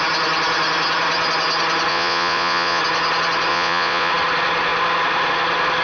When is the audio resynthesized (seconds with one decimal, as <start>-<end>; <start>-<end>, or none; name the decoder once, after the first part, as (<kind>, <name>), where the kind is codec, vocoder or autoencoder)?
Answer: 1.9-2.8 (vocoder, Vocos); 3.5-4.1